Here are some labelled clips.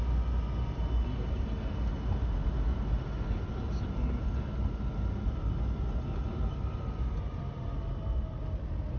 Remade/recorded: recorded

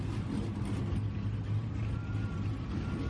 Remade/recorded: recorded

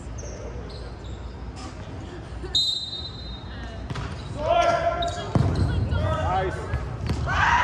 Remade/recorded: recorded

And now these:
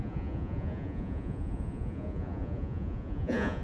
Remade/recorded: remade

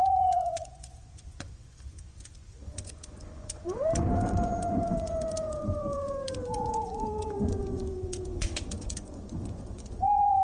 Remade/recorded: remade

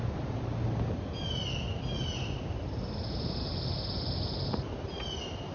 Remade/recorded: recorded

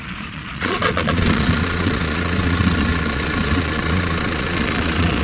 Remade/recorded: remade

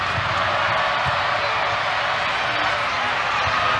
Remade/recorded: recorded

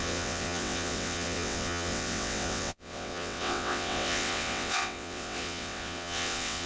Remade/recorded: remade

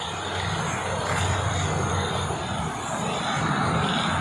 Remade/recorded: recorded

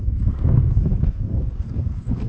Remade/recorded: remade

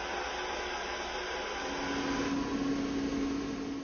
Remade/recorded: recorded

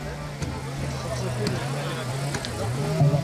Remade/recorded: recorded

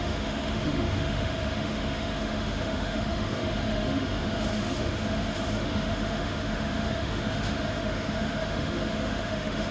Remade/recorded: remade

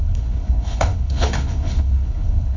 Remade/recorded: remade